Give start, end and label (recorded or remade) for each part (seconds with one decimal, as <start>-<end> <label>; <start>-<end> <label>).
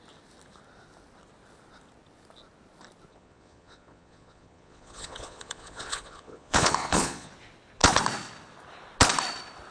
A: 0.0-3.1 recorded; 3.1-7.3 remade; 7.3-9.7 recorded